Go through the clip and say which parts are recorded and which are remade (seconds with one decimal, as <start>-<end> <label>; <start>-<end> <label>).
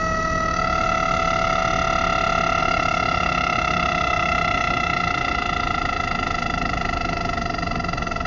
0.0-1.6 remade; 1.6-2.6 recorded; 2.6-8.3 remade